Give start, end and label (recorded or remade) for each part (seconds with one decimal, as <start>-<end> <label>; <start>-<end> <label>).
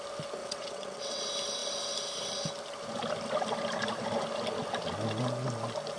0.0-0.4 recorded; 0.4-1.2 remade; 1.2-6.0 recorded